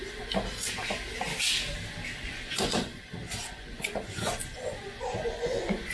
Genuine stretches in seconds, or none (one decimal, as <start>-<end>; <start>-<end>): 0.0-2.2